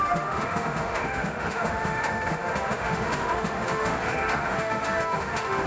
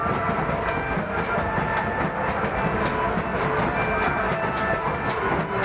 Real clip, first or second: second